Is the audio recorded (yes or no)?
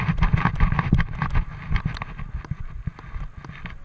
yes